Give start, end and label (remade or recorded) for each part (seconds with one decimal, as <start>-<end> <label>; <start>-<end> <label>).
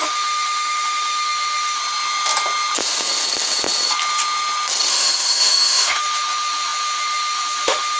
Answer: 0.0-1.8 remade; 1.8-4.9 recorded; 4.9-8.0 remade